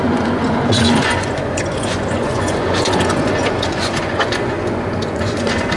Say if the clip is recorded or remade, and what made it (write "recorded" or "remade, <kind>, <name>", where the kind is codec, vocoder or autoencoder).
remade, vocoder, Vocos